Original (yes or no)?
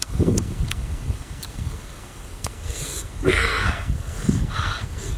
no